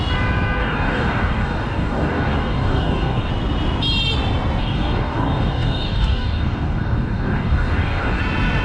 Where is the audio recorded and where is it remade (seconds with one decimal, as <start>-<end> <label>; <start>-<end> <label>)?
0.0-0.6 recorded; 0.6-3.3 remade; 3.3-4.6 recorded; 4.6-8.2 remade; 8.2-8.6 recorded